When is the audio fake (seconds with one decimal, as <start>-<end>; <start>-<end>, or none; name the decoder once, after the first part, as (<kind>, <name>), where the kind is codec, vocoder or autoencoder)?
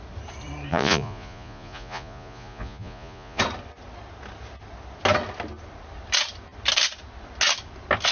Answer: 0.7-3.4 (vocoder, Vocos)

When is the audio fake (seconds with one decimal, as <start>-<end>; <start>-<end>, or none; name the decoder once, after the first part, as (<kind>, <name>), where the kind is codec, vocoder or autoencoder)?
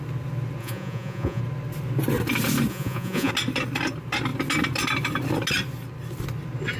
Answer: 0.6-1.4 (vocoder, Vocos); 2.7-3.3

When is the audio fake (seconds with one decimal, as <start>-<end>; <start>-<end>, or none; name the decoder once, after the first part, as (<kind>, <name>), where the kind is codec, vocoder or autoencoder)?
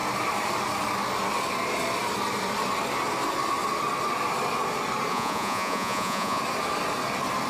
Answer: 5.1-6.4 (vocoder, Vocos)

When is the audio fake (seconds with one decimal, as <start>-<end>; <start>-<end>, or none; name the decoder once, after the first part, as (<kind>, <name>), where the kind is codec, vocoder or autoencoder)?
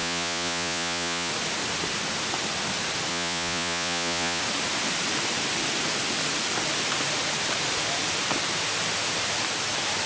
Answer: 0.0-1.3 (vocoder, Vocos); 3.1-4.4